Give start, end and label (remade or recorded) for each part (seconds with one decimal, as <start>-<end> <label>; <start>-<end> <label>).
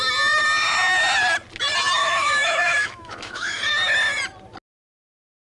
0.0-2.0 recorded; 2.0-3.6 remade; 3.6-5.5 recorded